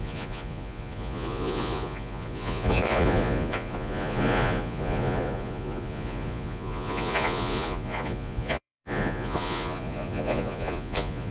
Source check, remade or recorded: remade